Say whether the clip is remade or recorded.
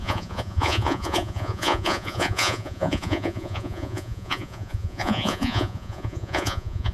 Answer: remade